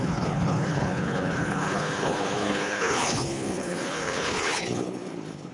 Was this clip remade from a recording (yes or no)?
yes